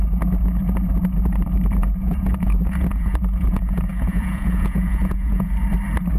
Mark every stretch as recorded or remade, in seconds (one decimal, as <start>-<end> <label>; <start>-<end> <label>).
0.0-1.8 recorded; 1.8-5.5 remade; 5.5-6.2 recorded